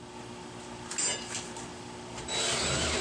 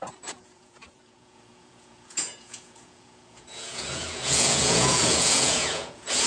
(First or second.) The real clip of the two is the first